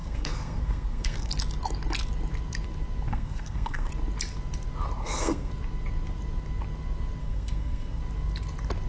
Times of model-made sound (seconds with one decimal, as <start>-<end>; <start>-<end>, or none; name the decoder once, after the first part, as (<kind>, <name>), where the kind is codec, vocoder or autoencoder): 0.0-1.3 (codec, SNAC); 3.1-3.9; 5.0-5.5; 7.2-8.0